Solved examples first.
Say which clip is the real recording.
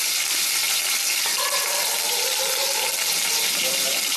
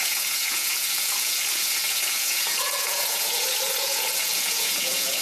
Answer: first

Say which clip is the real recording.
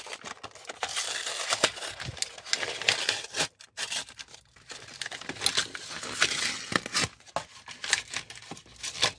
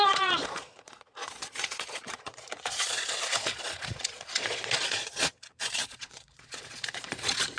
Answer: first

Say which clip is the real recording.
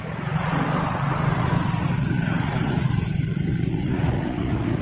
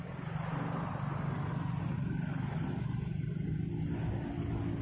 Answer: second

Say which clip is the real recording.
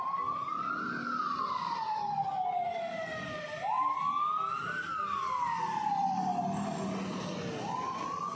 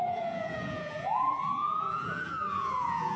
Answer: first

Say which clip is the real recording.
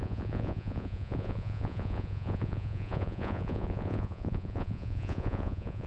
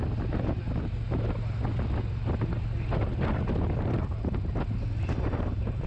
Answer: second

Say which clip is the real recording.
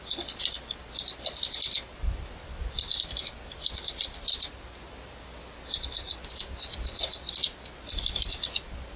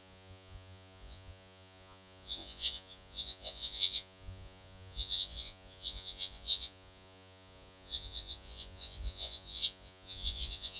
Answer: first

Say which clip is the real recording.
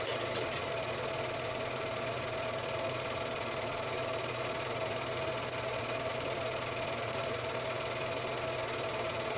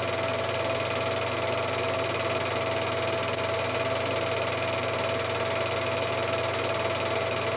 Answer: second